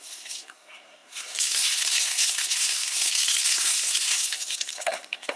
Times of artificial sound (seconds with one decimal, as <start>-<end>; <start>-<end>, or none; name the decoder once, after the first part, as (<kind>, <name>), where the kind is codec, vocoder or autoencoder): 0.0-5.4 (codec, SNAC)